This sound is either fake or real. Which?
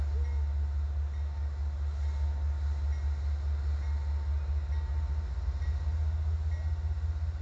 real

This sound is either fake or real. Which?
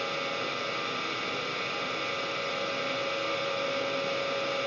real